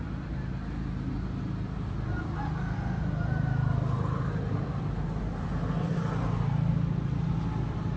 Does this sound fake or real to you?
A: real